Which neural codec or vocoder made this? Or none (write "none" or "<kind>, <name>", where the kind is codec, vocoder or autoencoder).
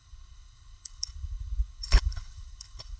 codec, HILCodec